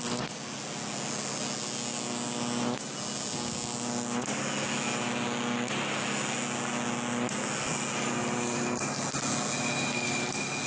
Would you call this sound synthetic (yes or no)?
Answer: no